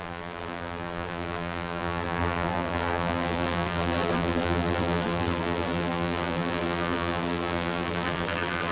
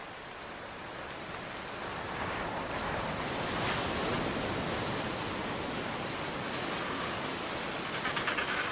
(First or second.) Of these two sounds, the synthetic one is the first